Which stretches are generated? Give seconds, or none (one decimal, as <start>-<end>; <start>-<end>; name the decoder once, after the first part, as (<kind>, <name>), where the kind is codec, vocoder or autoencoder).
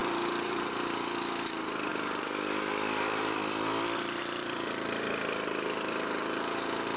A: 0.0-7.0 (vocoder, BigVGAN v2)